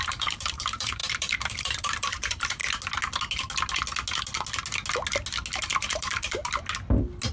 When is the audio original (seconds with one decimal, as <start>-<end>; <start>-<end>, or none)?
2.6-5.6; 6.4-7.3